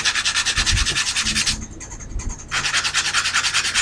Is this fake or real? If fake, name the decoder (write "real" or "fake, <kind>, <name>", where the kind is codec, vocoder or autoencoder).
real